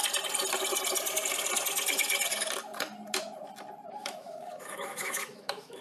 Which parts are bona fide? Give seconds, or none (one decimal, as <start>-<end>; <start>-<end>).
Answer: 0.0-4.0